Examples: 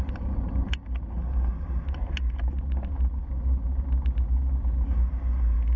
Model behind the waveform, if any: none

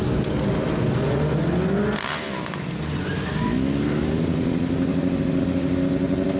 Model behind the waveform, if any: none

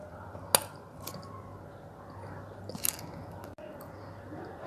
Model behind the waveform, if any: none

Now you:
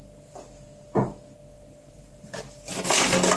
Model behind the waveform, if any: none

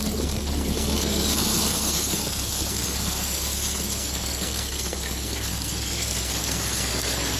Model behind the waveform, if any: codec, SNAC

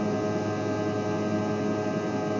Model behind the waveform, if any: none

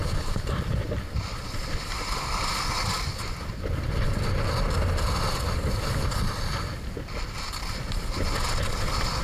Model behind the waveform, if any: none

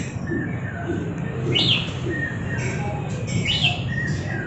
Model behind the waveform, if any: none